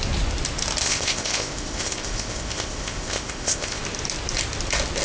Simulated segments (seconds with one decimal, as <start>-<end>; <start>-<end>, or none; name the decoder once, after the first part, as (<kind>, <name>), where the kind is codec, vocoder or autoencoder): 0.8-3.8 (codec, ZipCodec)